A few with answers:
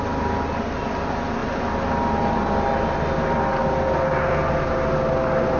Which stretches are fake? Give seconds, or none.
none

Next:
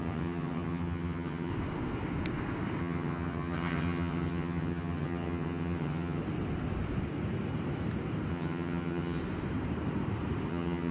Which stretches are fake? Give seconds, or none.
0.0-1.5; 2.8-6.2; 8.3-9.2; 10.5-10.9

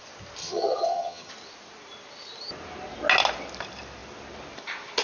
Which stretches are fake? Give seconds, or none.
0.4-1.3